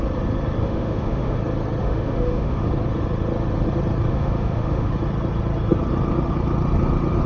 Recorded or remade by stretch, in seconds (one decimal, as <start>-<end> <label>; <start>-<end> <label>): 0.0-0.6 recorded; 0.6-1.4 remade; 1.4-1.8 recorded; 1.8-2.7 remade; 2.7-4.1 recorded; 4.1-4.9 remade; 4.9-7.3 recorded